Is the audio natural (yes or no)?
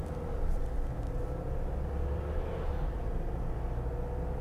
yes